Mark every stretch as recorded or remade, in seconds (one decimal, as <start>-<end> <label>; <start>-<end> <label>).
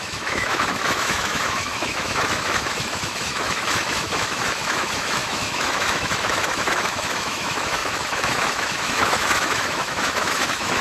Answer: 0.0-10.8 remade